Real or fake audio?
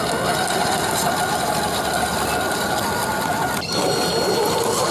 real